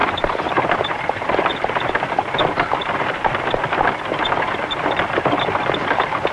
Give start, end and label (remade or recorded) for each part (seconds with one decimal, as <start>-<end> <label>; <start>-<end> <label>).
0.0-1.9 remade; 1.9-6.3 recorded